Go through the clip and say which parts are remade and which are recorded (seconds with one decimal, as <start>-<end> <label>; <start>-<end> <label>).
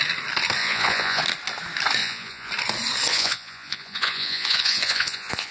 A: 0.0-0.6 recorded; 0.6-1.2 remade; 1.2-2.0 recorded; 2.0-2.5 remade; 2.5-3.1 recorded; 3.1-5.5 remade